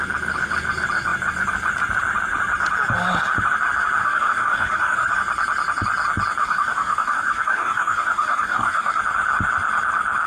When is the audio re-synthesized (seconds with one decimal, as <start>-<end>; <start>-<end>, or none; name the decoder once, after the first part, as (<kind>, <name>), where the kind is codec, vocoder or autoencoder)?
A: 4.0-5.1 (codec, DAC); 6.4-9.0